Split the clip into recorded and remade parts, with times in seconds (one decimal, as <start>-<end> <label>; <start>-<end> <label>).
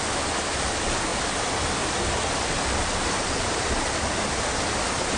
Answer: 0.0-5.2 recorded